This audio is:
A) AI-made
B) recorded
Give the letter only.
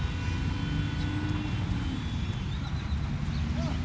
B